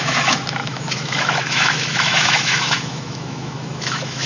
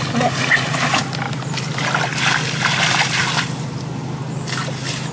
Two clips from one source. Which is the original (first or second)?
second